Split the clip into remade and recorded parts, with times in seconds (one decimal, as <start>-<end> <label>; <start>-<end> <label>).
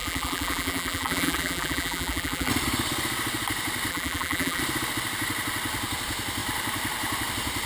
0.0-2.5 remade; 2.5-3.9 recorded; 3.9-4.6 remade; 4.6-7.7 recorded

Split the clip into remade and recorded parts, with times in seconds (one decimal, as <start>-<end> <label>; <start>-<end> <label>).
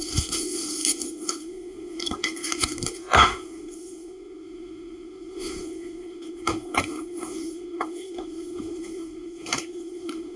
0.0-10.4 remade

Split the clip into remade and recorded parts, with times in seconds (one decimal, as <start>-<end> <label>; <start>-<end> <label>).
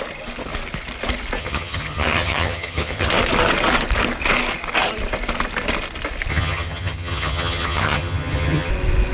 0.0-1.4 recorded; 1.4-3.1 remade; 3.1-6.3 recorded; 6.3-8.7 remade; 8.7-9.1 recorded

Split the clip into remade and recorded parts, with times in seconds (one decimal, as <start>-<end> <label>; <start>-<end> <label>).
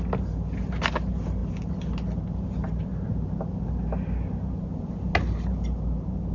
0.0-6.3 recorded